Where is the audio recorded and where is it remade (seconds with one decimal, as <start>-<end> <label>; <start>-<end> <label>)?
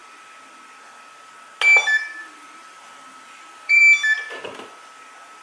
0.0-2.2 recorded; 2.2-3.8 remade; 3.8-5.4 recorded